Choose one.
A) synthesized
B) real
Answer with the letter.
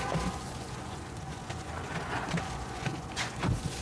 A